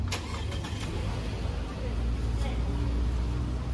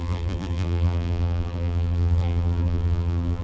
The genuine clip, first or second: first